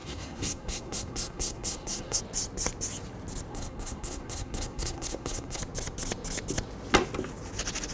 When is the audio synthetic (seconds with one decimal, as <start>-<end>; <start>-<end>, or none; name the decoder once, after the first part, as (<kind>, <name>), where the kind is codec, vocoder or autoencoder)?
0.0-2.2 (codec, SNAC); 3.5-5.6